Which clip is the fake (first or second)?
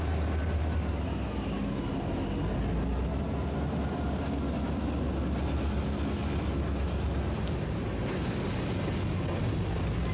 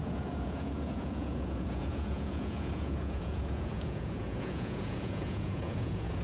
second